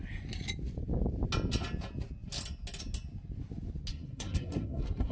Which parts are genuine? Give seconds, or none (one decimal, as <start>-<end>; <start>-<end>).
0.0-3.9